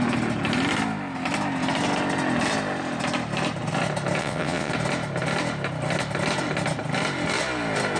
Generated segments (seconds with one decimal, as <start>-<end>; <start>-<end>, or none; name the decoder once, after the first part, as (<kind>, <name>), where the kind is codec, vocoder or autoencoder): 4.2-4.7 (vocoder, WaveNeXt)